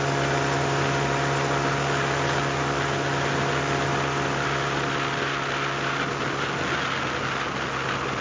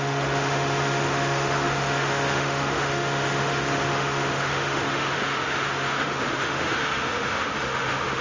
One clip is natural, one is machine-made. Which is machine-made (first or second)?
second